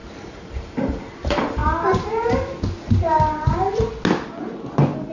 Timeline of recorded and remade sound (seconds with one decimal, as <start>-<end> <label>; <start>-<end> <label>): 0.0-1.6 remade; 1.6-5.1 recorded